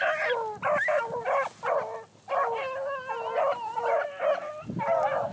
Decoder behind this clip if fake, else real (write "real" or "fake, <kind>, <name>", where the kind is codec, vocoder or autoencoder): real